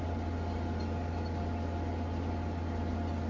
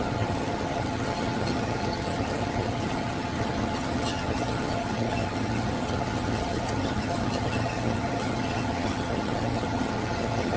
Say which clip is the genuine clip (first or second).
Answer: first